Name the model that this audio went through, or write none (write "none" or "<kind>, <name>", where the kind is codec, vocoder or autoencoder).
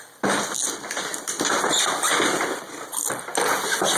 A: none